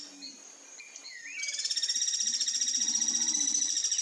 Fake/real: real